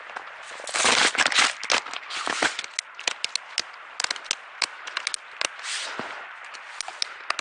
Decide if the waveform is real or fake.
real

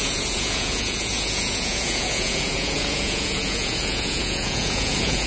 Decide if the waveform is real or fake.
fake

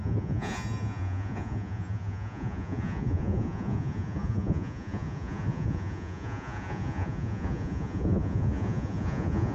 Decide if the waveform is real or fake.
fake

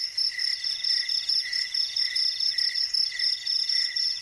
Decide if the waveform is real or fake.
real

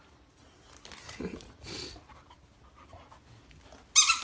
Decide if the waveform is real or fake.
real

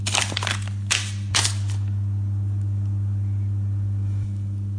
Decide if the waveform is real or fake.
real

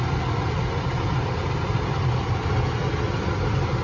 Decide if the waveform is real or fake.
real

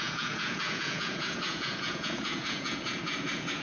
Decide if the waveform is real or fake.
fake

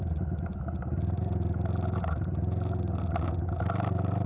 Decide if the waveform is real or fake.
real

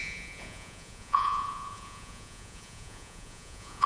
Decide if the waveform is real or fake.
fake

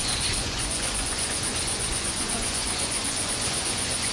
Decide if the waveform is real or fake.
fake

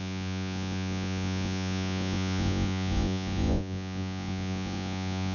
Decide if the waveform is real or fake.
fake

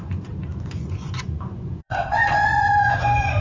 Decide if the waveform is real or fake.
fake